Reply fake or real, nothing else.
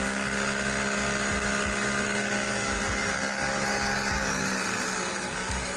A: fake